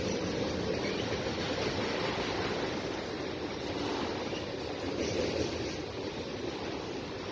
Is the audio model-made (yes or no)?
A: no